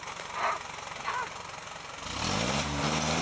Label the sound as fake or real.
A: real